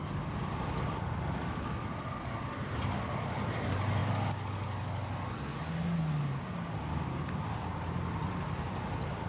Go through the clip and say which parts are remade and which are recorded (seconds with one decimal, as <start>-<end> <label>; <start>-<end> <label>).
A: 0.0-9.3 recorded